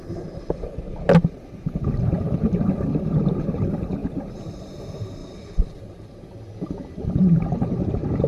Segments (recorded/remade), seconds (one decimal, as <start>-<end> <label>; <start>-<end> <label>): 0.0-4.0 recorded; 4.0-4.7 remade; 4.7-5.2 recorded; 5.2-7.2 remade; 7.2-8.3 recorded